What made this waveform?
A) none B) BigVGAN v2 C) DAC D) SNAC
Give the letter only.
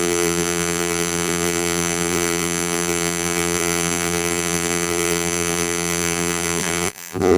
B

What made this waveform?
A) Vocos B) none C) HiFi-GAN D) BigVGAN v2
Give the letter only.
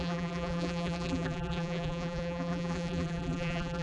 D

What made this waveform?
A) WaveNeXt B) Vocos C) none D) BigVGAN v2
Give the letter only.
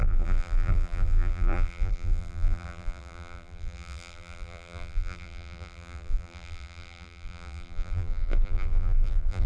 D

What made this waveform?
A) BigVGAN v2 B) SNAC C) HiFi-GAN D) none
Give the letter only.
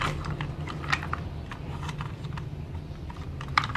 A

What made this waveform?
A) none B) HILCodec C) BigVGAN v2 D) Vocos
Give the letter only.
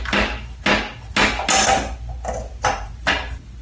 A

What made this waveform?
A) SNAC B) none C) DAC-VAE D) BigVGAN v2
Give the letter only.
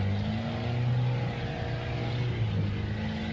B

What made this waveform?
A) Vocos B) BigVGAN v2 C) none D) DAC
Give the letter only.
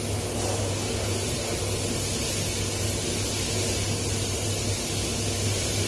C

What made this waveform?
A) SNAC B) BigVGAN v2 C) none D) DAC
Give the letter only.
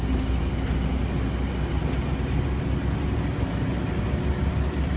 C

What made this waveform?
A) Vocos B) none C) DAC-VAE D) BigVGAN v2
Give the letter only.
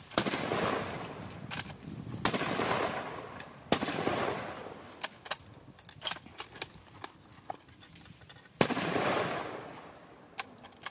B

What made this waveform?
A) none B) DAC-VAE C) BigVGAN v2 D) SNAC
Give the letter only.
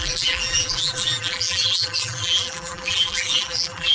C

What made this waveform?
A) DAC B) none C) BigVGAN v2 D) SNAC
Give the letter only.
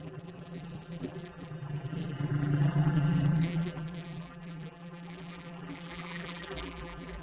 C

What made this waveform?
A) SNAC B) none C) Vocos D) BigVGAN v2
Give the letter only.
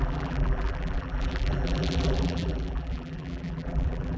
D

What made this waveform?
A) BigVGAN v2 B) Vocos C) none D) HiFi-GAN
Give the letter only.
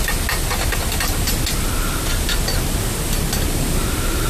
C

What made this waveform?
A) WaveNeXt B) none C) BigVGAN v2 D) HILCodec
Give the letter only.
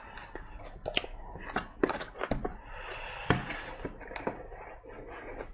B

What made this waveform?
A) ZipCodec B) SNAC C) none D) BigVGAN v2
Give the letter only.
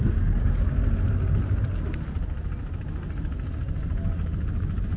C